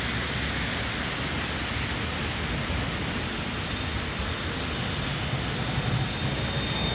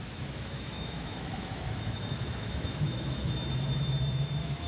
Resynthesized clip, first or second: second